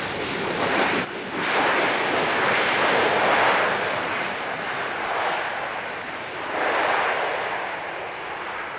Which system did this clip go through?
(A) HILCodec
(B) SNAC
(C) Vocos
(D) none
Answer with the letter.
D